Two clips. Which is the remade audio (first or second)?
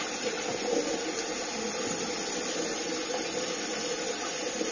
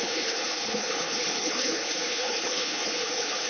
second